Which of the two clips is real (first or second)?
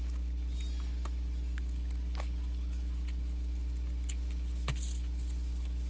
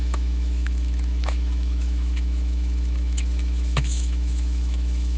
first